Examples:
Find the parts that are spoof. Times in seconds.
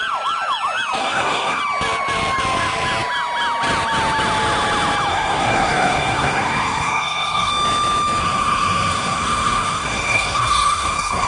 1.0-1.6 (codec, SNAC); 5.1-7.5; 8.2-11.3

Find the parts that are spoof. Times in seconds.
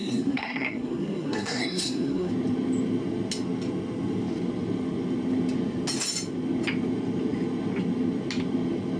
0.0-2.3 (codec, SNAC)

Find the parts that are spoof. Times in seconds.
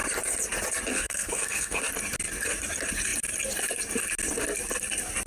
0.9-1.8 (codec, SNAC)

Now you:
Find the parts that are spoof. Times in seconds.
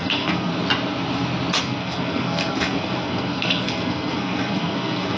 0.0-0.5 (codec, SNAC); 1.6-5.2